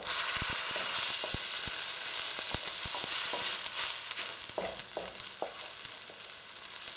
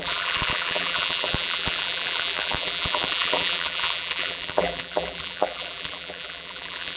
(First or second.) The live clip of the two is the first